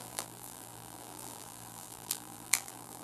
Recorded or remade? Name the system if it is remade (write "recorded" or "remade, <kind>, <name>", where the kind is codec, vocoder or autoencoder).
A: remade, vocoder, BigVGAN v2